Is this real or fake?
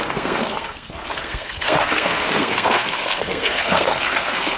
fake